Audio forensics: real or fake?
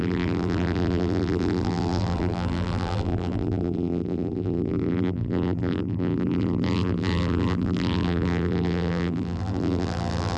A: fake